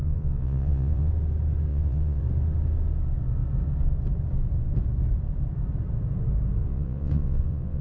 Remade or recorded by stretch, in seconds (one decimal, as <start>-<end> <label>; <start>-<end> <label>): 0.0-1.1 remade; 1.1-1.7 recorded; 1.7-2.2 remade; 2.2-6.6 recorded; 6.6-7.8 remade